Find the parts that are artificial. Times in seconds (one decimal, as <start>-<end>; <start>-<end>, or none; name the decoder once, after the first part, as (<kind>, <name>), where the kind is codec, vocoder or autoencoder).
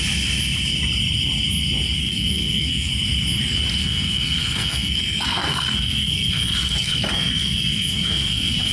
2.0-2.9 (codec, SNAC); 3.8-8.7